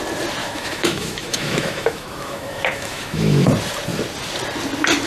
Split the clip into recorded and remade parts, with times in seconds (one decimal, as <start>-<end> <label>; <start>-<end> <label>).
0.0-0.4 recorded; 0.4-3.5 remade; 3.5-5.1 recorded